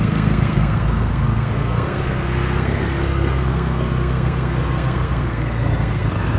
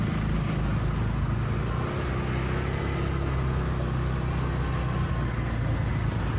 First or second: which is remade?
first